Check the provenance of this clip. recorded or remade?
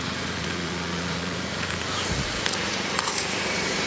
remade